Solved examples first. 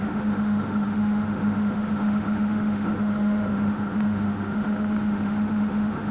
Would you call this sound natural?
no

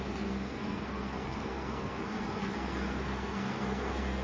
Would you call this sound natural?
no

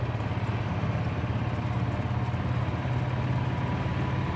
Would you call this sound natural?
yes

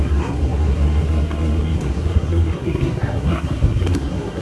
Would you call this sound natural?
no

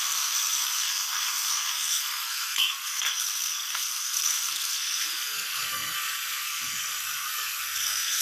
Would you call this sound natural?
no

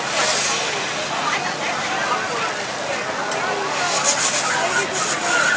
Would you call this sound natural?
yes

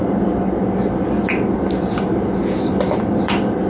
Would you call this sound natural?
yes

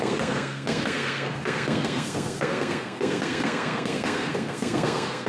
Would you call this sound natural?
no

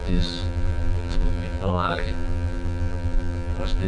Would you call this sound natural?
no